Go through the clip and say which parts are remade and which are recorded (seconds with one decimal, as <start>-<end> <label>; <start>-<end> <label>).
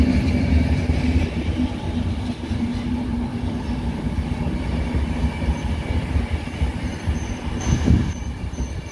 0.0-8.9 recorded